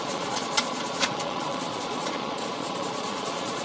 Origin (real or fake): fake